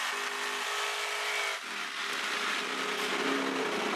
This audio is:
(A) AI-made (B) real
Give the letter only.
B